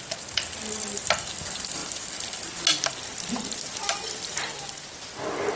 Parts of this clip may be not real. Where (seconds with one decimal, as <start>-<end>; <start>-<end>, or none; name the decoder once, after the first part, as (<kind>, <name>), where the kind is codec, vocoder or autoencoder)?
none